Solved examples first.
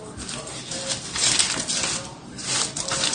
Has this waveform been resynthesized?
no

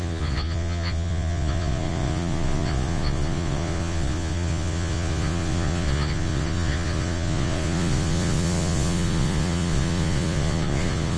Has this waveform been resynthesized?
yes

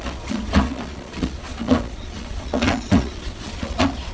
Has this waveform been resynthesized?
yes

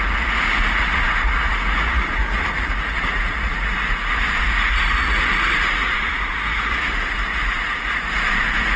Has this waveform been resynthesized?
yes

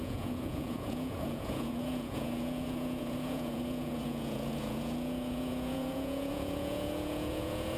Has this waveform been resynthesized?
yes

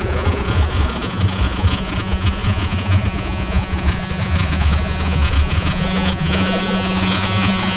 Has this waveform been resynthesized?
yes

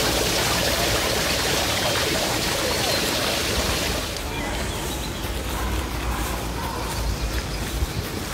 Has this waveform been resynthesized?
no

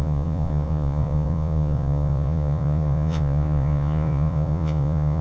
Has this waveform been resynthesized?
yes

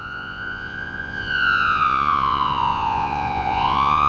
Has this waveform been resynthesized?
yes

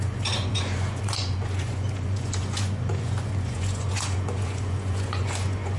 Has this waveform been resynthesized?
yes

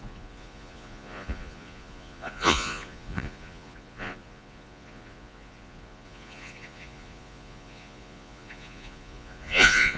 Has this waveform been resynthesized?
yes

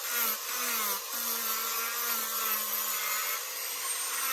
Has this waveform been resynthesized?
no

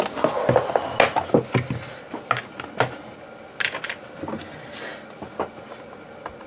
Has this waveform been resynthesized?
no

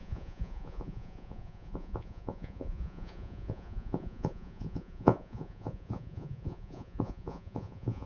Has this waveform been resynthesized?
yes